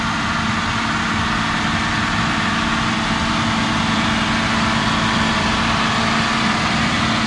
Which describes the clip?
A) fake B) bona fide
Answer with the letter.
B